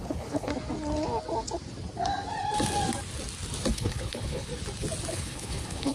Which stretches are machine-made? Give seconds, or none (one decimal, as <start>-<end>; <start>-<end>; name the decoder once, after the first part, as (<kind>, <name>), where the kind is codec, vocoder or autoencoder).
0.0-0.5 (codec, HILCodec); 3.7-4.5; 5.1-5.9

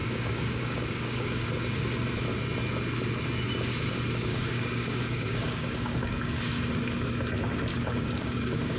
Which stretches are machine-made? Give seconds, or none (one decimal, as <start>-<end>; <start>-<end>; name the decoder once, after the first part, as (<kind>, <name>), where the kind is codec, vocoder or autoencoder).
0.0-1.5 (codec, DAC); 4.3-6.4; 7.7-8.8